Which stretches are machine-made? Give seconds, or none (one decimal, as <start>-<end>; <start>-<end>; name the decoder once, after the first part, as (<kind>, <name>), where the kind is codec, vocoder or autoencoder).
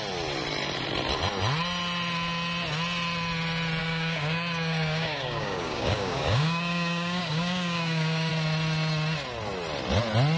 3.8-8.3 (codec, DAC)